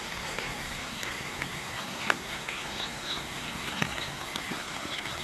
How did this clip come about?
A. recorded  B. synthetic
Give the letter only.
B